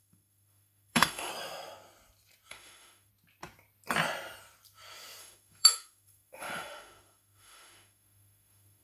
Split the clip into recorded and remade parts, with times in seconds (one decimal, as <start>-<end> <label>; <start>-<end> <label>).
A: 0.0-1.3 remade; 1.3-2.5 recorded; 2.5-3.1 remade; 3.1-5.2 recorded; 5.2-8.8 remade